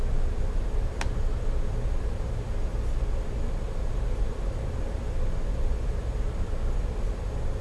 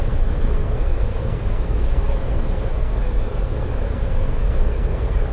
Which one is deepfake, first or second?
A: second